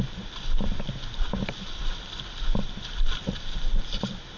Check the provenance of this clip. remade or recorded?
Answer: recorded